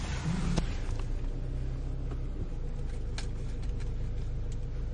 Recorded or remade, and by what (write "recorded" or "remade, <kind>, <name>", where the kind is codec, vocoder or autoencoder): recorded